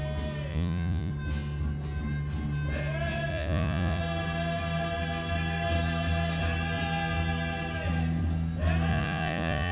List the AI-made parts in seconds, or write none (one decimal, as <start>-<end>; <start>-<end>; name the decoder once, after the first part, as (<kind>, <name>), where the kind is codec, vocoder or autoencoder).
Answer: 0.5-1.1 (vocoder, Vocos); 3.3-4.0; 8.9-9.7